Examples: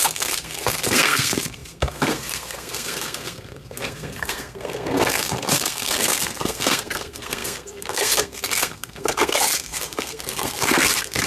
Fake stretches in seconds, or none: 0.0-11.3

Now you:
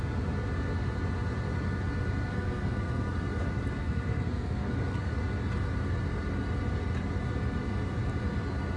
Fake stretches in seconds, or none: 2.3-3.1; 3.8-5.1

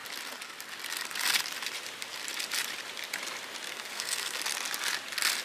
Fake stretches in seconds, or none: 3.7-4.4

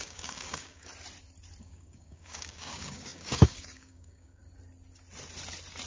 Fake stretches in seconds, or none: 0.0-0.9; 1.6-4.4

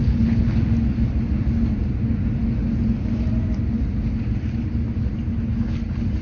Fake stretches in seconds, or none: 0.0-0.6

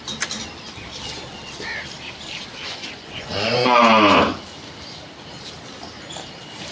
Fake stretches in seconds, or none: 2.6-3.8

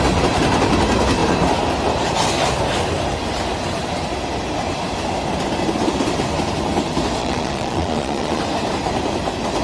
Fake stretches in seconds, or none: 7.2-8.4